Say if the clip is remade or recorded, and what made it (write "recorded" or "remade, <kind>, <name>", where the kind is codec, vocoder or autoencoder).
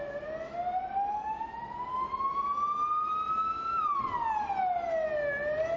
recorded